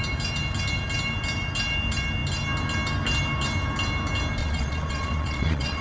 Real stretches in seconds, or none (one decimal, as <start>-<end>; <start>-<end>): 0.0-4.4

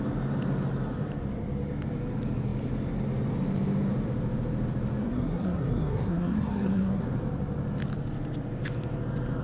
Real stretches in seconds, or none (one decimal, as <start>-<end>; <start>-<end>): 0.0-5.0; 7.0-9.4

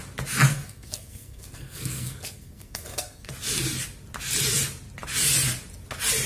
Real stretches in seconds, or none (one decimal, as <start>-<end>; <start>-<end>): 0.0-0.5; 3.3-6.3

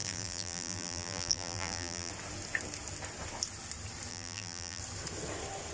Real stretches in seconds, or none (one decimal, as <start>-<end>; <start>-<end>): 2.1-4.1; 4.8-5.7

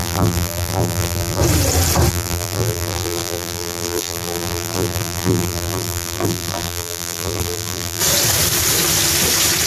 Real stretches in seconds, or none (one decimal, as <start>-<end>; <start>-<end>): 1.4-2.1; 8.0-9.7

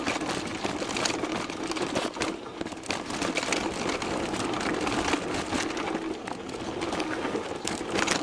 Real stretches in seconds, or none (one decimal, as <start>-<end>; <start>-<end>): 0.0-8.2